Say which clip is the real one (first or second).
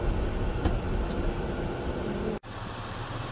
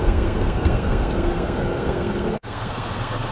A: first